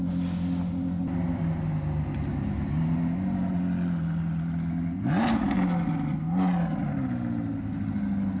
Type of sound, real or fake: real